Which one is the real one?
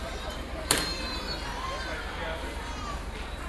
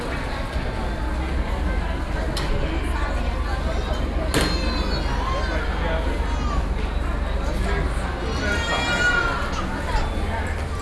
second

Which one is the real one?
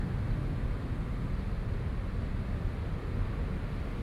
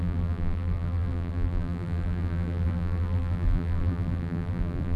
first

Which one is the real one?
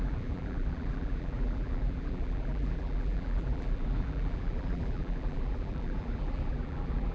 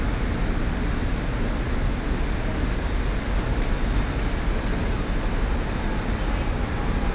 second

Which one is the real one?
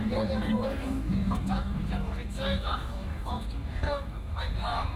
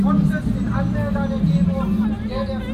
second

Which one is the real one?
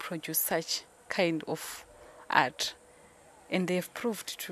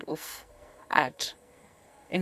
first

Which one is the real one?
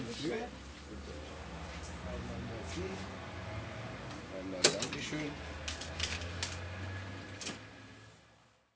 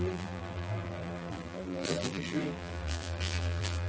first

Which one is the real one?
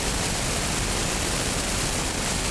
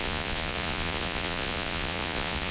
first